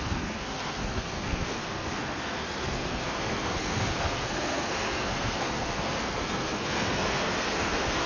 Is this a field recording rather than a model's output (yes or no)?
no